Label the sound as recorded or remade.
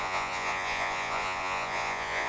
remade